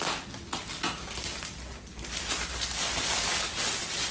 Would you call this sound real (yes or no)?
yes